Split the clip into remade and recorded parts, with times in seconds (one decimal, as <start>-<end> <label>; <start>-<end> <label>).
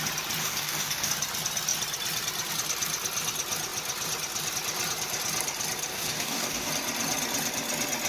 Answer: 0.0-0.4 recorded; 0.4-1.1 remade; 1.1-5.9 recorded; 5.9-6.7 remade; 6.7-8.1 recorded